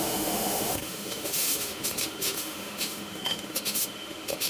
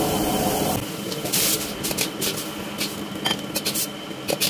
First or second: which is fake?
first